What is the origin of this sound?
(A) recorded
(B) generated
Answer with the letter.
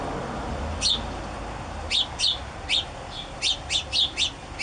A